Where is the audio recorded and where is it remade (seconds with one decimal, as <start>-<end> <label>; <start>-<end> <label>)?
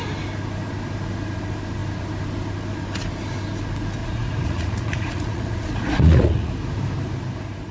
0.0-4.0 recorded; 4.0-6.5 remade; 6.5-7.7 recorded